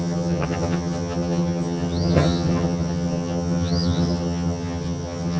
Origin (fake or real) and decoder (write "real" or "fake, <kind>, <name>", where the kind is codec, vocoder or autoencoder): fake, vocoder, HiFi-GAN